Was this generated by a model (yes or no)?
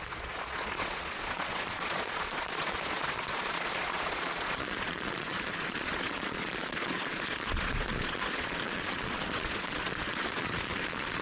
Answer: yes